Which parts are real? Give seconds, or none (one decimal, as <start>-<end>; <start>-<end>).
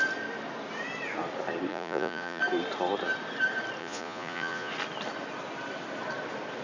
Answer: 0.0-1.7; 2.4-3.8; 4.7-6.6